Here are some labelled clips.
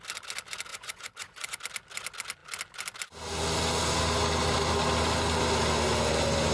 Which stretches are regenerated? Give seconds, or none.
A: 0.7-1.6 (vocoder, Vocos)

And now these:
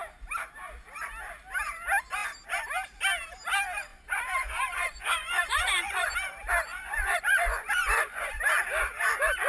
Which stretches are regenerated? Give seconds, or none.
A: 3.9-6.1 (vocoder, Vocos); 6.7-8.4

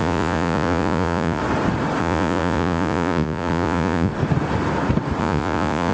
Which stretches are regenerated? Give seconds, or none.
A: 0.0-1.4 (vocoder, Vocos); 2.0-4.1; 5.2-5.9

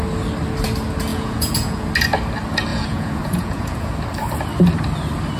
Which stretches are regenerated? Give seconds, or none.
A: 1.1-1.9 (vocoder, Vocos); 2.7-3.9

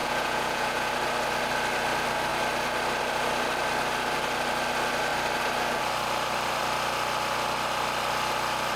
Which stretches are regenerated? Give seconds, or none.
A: 0.0-0.9 (vocoder, Vocos)

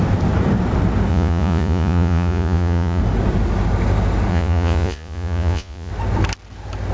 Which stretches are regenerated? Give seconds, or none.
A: 1.1-3.0 (vocoder, Vocos); 4.3-5.9

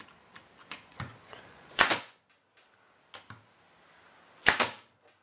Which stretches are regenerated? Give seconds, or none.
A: 0.6-2.2 (vocoder, Vocos)

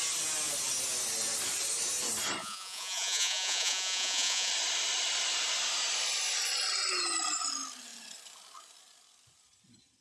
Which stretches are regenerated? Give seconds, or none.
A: 2.4-4.5 (vocoder, Vocos)